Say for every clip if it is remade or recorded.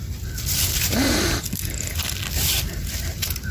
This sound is recorded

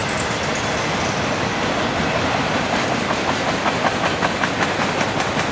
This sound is recorded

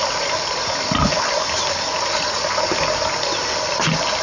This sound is recorded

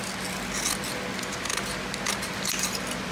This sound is recorded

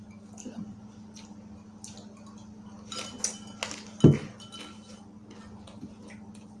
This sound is recorded